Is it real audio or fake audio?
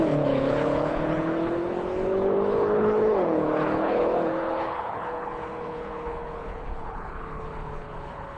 fake